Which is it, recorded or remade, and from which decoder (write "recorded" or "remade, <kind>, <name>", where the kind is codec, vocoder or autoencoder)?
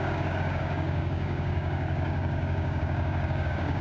remade, codec, DAC